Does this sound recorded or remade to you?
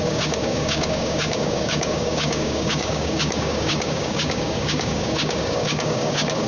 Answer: remade